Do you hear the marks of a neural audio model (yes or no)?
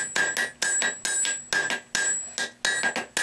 no